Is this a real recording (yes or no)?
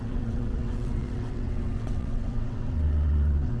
no